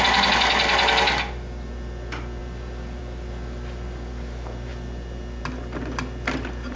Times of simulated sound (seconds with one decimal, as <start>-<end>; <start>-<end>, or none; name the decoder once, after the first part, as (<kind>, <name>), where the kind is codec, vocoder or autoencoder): 2.4-3.0 (vocoder, BigVGAN v2)